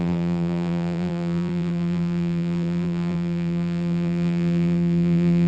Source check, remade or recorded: remade